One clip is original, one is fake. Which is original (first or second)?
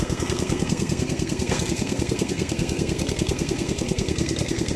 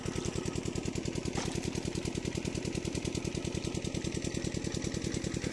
second